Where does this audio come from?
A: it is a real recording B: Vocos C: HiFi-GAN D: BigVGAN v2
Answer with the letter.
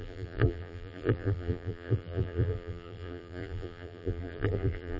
D